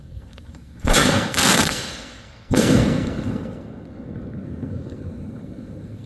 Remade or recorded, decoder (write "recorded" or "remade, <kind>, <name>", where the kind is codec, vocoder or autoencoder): remade, codec, SNAC